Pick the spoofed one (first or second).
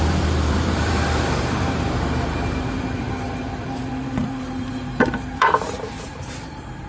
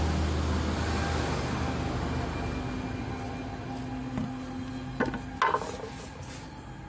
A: first